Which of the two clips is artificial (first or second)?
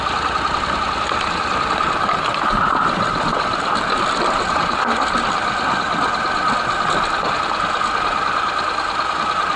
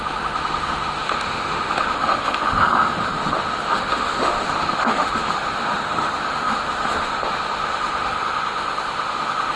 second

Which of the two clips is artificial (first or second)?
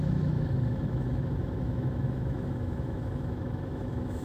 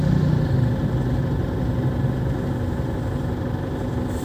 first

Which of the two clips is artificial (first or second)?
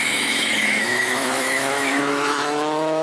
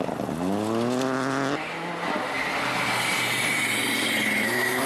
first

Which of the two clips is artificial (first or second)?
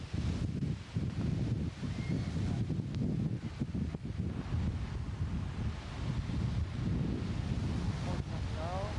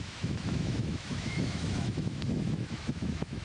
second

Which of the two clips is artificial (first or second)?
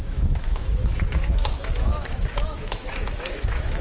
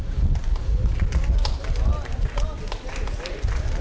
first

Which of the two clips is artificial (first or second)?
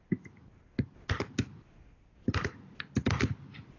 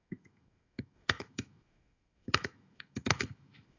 second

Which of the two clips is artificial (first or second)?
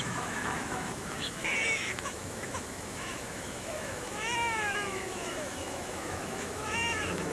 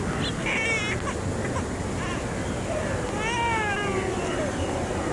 first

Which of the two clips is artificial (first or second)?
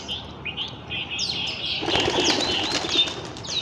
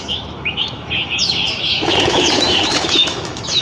second